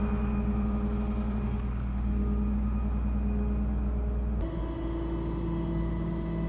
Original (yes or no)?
yes